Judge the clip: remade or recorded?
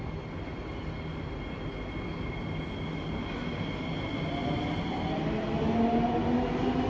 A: recorded